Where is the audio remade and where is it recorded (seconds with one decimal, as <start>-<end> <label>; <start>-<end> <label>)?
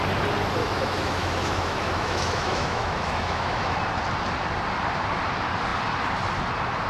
0.0-0.6 recorded; 0.6-3.8 remade; 3.8-6.9 recorded